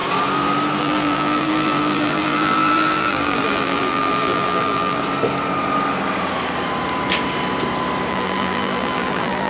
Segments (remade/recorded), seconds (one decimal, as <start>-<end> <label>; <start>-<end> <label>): 0.0-0.8 recorded; 0.8-5.0 remade; 5.0-8.1 recorded; 8.1-9.5 remade